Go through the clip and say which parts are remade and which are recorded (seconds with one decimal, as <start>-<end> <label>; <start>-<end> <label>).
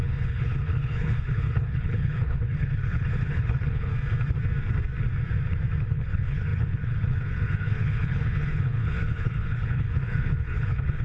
0.0-3.9 remade; 3.9-5.8 recorded; 5.8-11.0 remade